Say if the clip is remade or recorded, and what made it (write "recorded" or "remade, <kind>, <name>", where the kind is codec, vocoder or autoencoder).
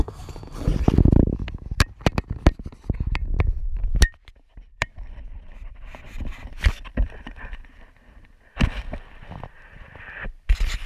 remade, vocoder, BigVGAN v2